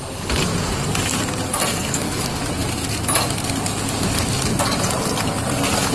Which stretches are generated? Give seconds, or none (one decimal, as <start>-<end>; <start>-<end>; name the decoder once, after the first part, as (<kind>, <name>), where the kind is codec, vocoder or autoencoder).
1.7-2.2 (codec, SNAC)